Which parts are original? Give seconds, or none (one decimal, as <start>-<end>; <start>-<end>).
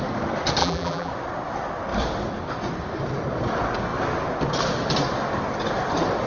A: 0.0-0.6; 1.1-6.3